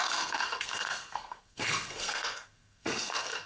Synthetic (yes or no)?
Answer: yes